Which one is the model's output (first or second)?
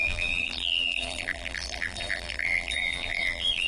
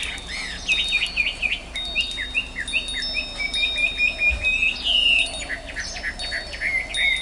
first